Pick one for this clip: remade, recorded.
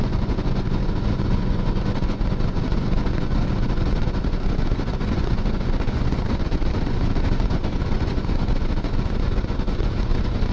remade